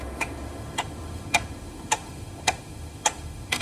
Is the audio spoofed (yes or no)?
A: yes